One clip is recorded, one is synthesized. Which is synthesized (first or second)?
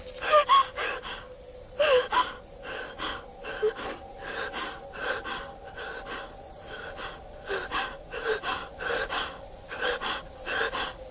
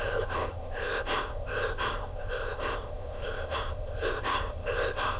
second